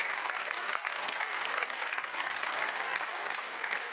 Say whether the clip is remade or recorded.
remade